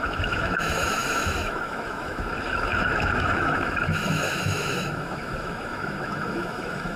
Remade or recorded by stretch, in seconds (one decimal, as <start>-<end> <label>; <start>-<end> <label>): 0.0-7.0 remade